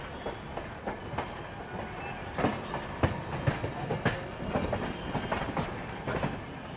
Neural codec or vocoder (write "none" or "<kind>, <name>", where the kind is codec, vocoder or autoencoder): none